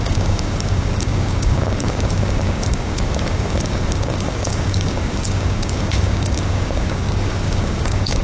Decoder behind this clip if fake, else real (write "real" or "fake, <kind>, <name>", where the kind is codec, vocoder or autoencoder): fake, codec, DAC